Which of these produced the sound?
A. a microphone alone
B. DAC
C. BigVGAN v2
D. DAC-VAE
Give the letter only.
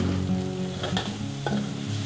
A